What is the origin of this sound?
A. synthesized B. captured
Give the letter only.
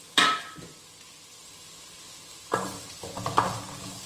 B